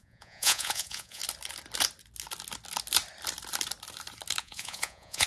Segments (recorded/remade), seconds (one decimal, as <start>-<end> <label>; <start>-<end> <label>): 0.0-1.2 remade; 1.2-4.4 recorded; 4.4-5.3 remade